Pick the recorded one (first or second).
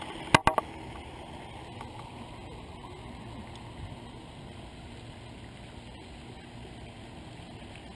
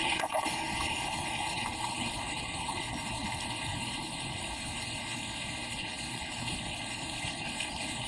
first